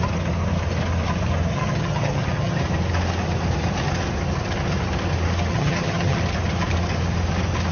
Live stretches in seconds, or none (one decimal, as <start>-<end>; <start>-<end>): 0.0-1.5; 2.6-5.5; 6.2-7.7